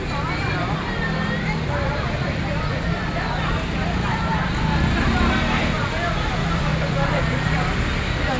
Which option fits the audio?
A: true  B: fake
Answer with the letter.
A